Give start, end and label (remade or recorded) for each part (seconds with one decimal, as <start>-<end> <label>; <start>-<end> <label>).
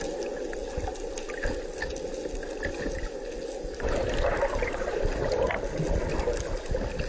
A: 0.0-7.1 recorded